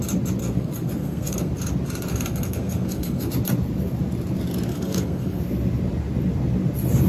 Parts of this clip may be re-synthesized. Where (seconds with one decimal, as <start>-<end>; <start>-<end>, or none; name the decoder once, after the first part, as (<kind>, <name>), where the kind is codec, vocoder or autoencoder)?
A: 0.4-1.5 (codec, SNAC); 2.1-3.3; 4.7-5.4